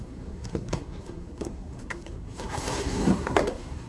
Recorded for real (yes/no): no